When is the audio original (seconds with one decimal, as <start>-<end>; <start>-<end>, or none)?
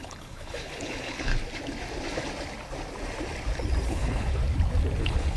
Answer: 1.3-3.9; 4.4-5.0